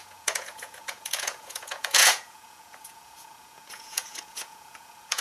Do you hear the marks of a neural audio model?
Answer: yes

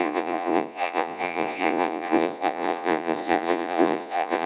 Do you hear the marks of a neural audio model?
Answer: yes